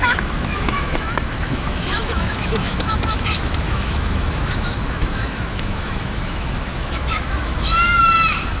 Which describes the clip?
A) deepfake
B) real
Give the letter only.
A